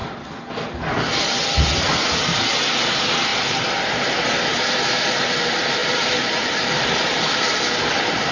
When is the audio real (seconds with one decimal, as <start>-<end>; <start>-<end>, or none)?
0.0-2.2